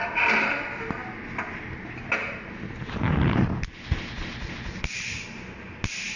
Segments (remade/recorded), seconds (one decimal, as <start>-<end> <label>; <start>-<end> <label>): 0.0-6.2 recorded